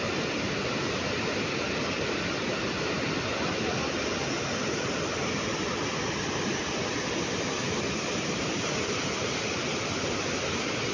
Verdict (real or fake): real